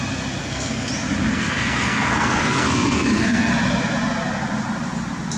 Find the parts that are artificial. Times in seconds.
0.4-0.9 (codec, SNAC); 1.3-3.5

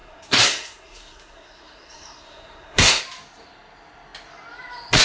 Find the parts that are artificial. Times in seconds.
0.0-3.0 (codec, SNAC)

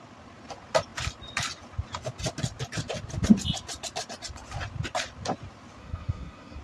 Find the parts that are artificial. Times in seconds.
5.8-6.6 (codec, SNAC)

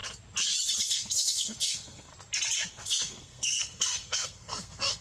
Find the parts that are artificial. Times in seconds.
0.8-2.1 (codec, SNAC); 2.7-5.0